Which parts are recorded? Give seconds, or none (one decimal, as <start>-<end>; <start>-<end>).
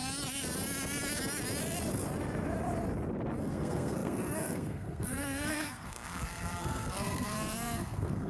0.0-3.4